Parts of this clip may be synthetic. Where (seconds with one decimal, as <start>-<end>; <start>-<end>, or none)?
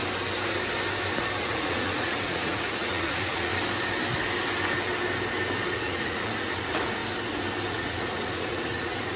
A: 1.4-3.5; 5.7-7.0; 7.7-9.2